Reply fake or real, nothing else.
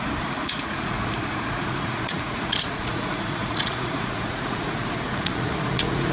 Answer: fake